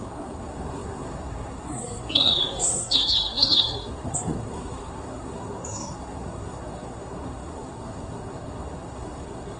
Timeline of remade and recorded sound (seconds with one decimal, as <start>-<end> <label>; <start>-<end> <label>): 0.0-9.6 remade